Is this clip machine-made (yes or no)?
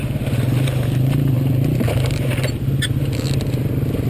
no